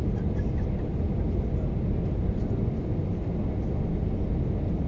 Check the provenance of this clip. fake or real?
real